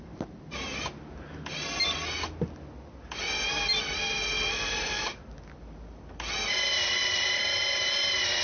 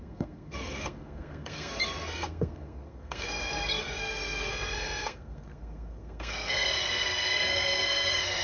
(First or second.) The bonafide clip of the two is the first